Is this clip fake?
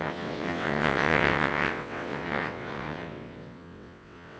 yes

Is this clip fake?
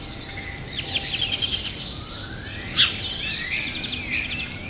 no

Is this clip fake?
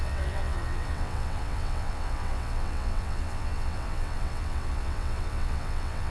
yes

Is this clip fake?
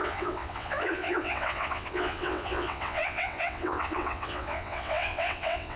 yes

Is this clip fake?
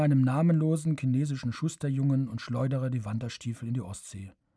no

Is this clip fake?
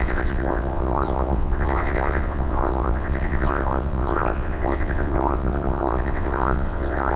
yes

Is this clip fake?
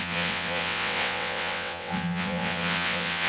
yes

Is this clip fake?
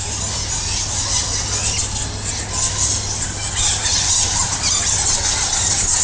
no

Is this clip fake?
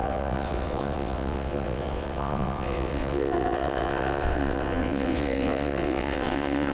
yes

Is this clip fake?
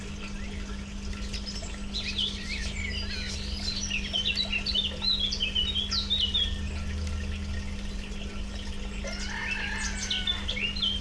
no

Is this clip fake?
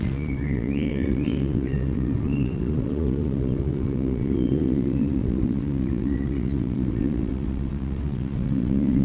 yes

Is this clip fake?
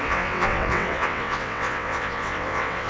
yes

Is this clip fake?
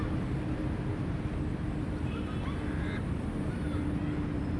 no